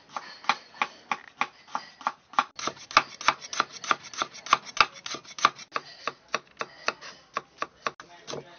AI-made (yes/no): no